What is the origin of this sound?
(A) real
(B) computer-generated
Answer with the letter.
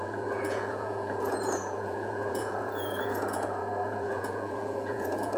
B